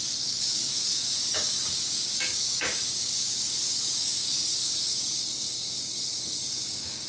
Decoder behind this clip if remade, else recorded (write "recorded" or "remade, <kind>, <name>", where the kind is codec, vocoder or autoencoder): remade, codec, DAC